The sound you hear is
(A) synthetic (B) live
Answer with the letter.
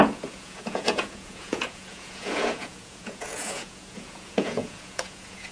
A